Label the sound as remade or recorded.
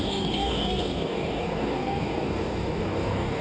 remade